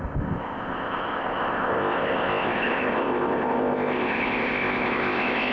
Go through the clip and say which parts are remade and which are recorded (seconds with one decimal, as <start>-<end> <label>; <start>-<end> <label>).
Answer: 0.0-5.5 remade